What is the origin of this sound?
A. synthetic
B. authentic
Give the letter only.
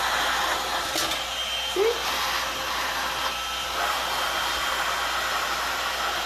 B